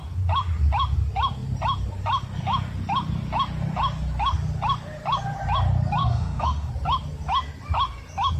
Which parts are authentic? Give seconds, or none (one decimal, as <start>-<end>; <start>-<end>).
0.0-6.0; 6.7-8.4